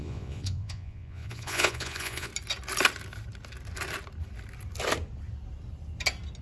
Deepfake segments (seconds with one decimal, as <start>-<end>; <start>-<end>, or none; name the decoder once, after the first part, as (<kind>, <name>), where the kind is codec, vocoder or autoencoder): 0.0-2.3 (vocoder, Vocos)